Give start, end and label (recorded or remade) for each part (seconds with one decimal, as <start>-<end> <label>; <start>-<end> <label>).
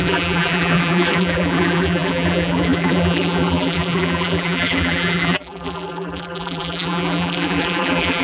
0.0-8.2 remade